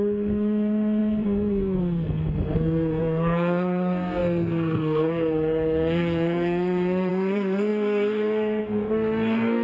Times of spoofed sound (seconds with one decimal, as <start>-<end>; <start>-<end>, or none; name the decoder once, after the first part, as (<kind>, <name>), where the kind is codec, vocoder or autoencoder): 0.0-9.6 (codec, SNAC)